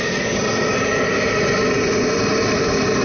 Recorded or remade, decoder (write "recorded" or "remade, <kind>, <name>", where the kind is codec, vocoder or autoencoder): recorded